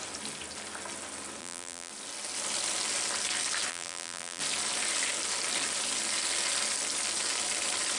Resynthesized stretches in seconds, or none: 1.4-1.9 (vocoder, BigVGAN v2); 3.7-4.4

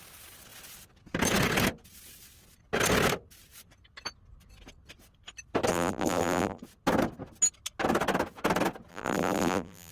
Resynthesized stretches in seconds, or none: 5.7-6.6 (vocoder, BigVGAN v2); 8.9-9.9

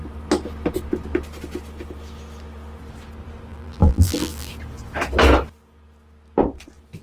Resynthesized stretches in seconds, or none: 3.5-4.5 (vocoder, BigVGAN v2)

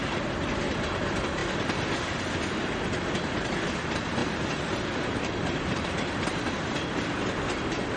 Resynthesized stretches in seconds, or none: 4.2-6.3 (vocoder, BigVGAN v2)

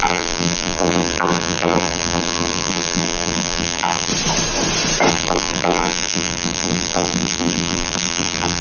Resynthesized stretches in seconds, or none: 0.0-4.1 (vocoder, BigVGAN v2); 5.1-8.6

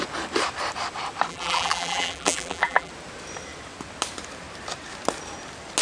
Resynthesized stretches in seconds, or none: 1.3-2.9 (vocoder, BigVGAN v2)